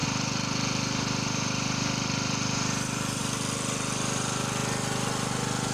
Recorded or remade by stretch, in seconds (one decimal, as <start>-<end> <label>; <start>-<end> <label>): 0.0-3.2 remade; 3.2-5.7 recorded

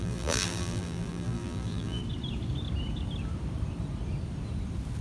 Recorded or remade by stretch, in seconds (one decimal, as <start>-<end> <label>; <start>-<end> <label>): 0.0-2.0 remade; 2.0-5.0 recorded

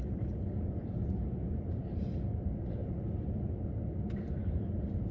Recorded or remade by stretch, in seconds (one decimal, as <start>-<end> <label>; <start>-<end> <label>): 0.0-0.8 recorded; 0.8-1.8 remade; 1.8-2.8 recorded; 2.8-3.5 remade; 3.5-5.1 recorded

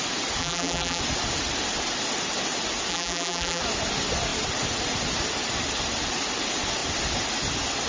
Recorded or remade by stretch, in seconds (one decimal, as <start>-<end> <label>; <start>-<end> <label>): 0.0-0.4 recorded; 0.4-1.0 remade; 1.0-2.9 recorded; 2.9-3.6 remade; 3.6-7.9 recorded

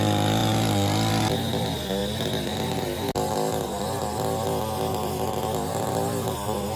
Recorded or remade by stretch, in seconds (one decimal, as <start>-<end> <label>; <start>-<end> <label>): 0.0-6.8 recorded

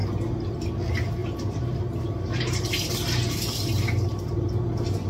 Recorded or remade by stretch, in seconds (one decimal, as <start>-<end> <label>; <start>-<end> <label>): 0.0-1.2 recorded; 1.2-4.3 remade; 4.3-5.1 recorded

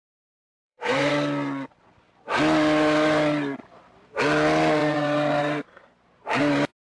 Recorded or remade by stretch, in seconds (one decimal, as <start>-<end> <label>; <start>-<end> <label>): 0.0-1.1 remade; 1.1-4.8 recorded; 4.8-6.4 remade; 6.4-7.0 recorded